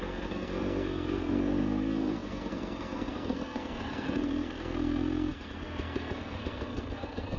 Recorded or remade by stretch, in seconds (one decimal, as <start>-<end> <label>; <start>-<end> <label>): 0.0-7.4 remade